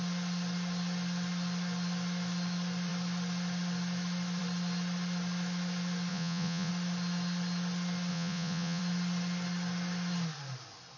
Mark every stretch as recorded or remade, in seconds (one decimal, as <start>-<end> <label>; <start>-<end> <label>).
0.0-6.1 recorded; 6.1-6.7 remade; 6.7-8.1 recorded; 8.1-8.8 remade; 8.8-11.0 recorded